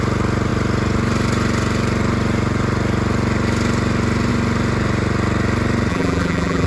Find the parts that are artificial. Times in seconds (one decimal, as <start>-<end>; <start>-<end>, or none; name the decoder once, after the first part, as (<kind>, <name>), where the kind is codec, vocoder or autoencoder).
5.9-6.7 (vocoder, BigVGAN v2)